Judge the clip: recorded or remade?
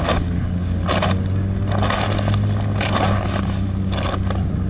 recorded